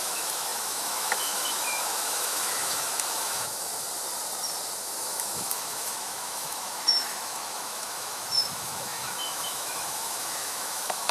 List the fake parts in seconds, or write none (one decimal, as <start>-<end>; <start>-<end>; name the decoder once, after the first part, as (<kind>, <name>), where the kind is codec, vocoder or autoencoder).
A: 0.0-3.7 (autoencoder, DAC-VAE); 4.8-11.1